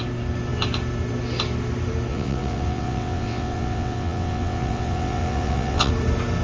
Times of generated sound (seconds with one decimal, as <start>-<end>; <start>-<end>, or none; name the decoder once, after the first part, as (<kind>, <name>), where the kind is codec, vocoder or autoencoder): 2.1-5.9 (vocoder, WaveNeXt)